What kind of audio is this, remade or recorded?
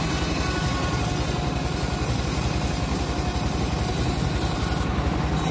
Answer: recorded